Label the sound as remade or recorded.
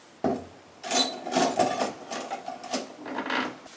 recorded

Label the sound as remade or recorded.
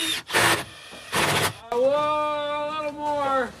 recorded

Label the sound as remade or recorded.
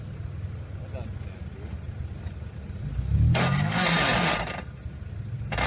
recorded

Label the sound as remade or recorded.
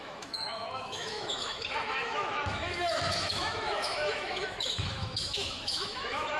remade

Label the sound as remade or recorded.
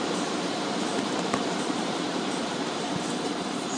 remade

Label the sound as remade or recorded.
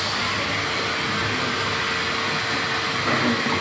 recorded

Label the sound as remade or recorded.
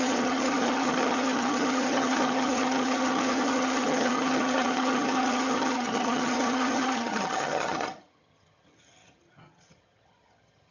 remade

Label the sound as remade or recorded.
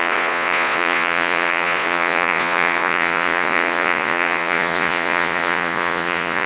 remade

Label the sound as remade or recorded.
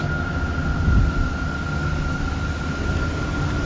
recorded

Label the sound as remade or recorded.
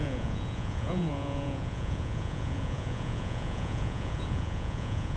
remade